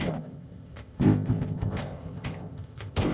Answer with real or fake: fake